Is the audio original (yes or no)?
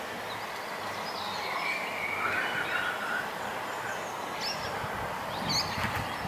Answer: yes